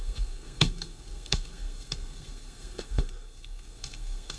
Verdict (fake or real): fake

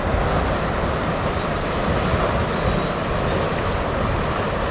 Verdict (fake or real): real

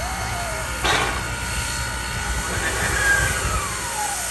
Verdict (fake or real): real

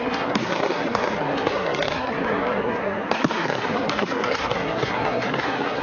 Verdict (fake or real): fake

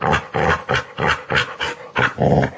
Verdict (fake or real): real